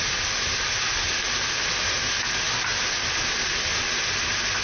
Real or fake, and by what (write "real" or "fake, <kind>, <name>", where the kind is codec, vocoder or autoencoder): real